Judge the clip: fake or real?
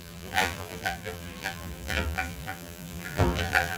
fake